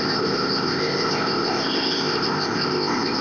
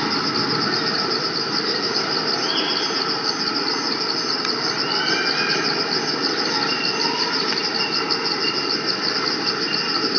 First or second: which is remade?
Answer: first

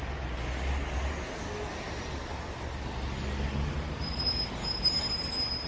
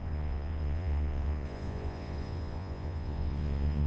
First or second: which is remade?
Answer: second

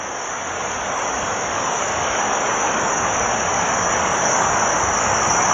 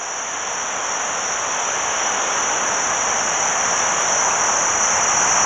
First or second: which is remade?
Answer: first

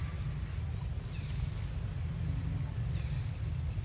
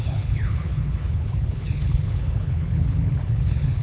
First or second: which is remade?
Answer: second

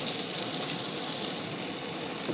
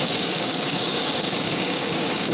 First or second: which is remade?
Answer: second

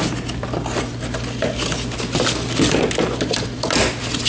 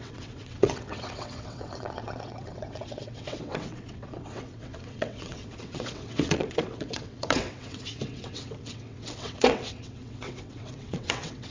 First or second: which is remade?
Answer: second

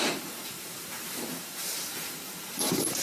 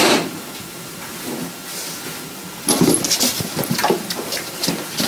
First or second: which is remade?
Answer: first